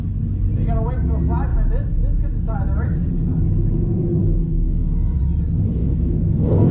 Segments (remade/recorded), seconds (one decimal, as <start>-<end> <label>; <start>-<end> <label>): 0.0-4.2 recorded; 4.2-5.2 remade; 5.2-5.8 recorded; 5.8-6.7 remade